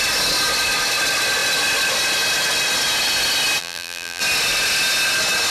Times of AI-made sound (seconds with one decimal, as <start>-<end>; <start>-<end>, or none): 3.6-4.2